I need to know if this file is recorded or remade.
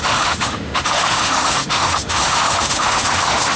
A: remade